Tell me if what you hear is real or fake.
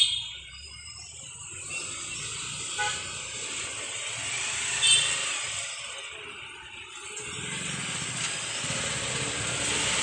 real